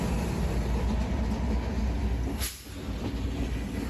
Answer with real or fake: real